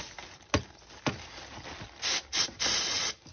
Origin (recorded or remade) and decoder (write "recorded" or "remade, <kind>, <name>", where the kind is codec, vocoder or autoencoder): recorded